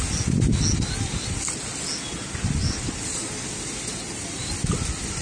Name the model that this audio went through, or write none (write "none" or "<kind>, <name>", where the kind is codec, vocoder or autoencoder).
none